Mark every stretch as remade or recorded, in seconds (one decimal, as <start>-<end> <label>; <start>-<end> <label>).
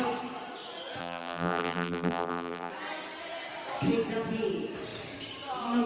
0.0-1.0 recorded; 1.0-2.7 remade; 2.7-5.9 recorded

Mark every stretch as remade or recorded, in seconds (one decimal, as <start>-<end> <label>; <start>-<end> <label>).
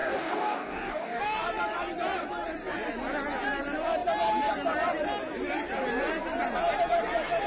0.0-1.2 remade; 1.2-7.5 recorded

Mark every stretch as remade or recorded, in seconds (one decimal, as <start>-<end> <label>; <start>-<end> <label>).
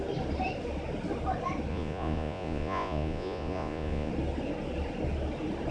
0.0-1.7 recorded; 1.7-4.1 remade; 4.1-5.7 recorded